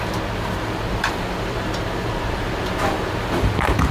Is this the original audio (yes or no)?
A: no